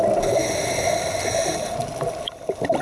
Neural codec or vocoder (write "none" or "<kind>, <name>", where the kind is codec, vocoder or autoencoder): none